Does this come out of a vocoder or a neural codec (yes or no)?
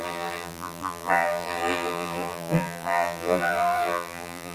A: yes